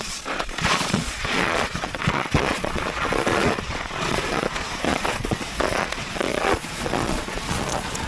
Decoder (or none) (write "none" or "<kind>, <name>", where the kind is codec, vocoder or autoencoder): vocoder, Vocos